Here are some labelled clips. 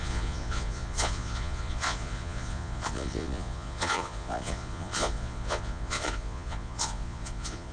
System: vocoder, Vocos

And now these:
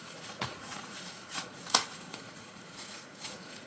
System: vocoder, Vocos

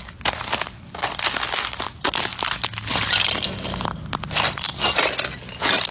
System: none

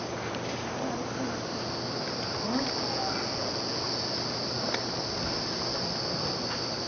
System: none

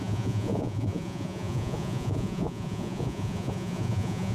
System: vocoder, Vocos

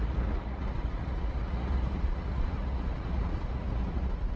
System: vocoder, Vocos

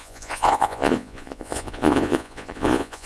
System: vocoder, Vocos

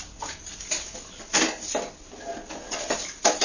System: none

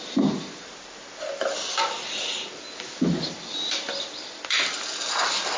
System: none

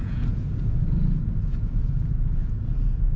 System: vocoder, Vocos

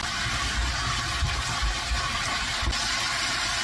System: none